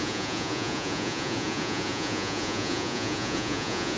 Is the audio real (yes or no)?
no